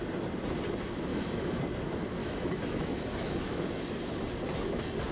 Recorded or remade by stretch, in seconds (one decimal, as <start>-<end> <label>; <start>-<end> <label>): 0.0-1.1 recorded; 1.1-1.6 remade; 1.6-2.2 recorded; 2.2-3.8 remade; 3.8-5.1 recorded